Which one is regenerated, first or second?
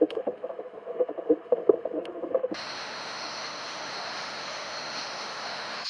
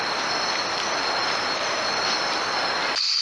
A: first